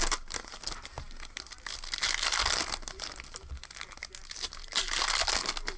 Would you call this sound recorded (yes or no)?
yes